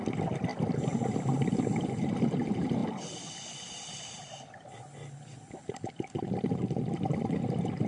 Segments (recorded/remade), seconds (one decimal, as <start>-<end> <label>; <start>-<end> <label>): 0.0-7.9 recorded